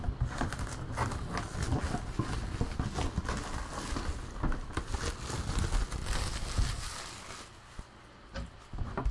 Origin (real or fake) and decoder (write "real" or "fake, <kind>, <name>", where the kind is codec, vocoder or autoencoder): real